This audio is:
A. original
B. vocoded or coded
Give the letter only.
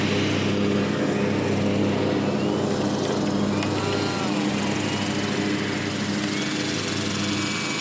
A